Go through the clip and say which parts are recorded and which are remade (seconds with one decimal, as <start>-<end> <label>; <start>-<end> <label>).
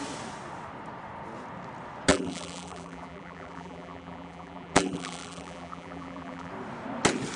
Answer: 0.0-2.1 recorded; 2.1-6.5 remade; 6.5-7.4 recorded